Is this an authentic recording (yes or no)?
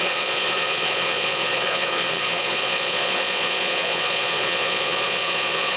no